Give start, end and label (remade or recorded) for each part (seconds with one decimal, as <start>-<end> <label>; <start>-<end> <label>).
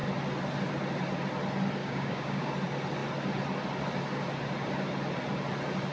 0.0-1.8 recorded; 1.8-2.5 remade; 2.5-5.9 recorded